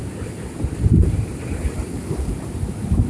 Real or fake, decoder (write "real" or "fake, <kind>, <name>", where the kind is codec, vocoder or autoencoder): real